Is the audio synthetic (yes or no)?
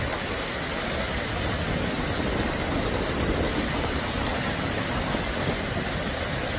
no